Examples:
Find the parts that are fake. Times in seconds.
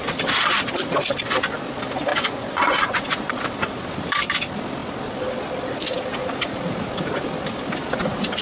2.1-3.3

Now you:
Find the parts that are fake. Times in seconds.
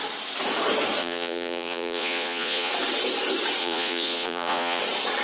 1.0-2.7; 3.6-4.8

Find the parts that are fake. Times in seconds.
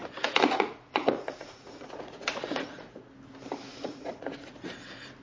0.0-3.1; 3.7-4.7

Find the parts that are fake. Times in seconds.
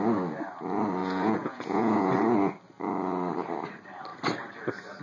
1.0-2.1